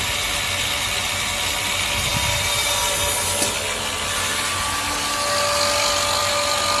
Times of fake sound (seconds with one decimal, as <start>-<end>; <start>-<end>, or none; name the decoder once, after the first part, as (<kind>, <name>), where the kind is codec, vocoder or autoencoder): none